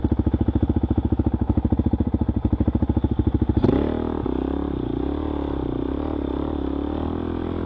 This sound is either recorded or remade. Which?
recorded